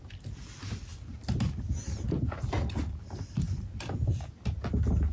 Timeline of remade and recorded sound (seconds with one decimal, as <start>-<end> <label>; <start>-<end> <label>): 0.0-5.1 recorded